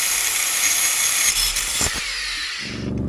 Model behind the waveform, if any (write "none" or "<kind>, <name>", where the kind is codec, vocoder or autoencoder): vocoder, BigVGAN v2